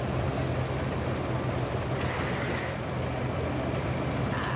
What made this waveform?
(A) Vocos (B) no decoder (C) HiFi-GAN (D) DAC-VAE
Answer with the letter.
B